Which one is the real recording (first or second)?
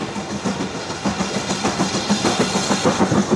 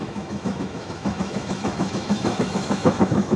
first